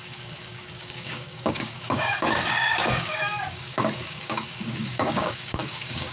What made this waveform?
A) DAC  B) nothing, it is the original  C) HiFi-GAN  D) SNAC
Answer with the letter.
A